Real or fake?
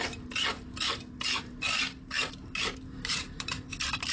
real